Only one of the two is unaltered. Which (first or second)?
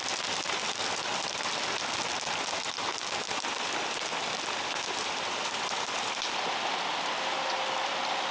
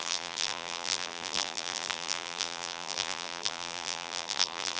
first